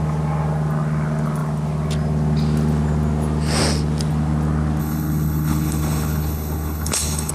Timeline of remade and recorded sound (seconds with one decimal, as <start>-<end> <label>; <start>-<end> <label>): 0.0-4.8 recorded; 4.8-7.3 remade